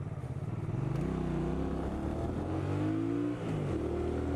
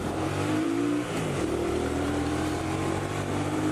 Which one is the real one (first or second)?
first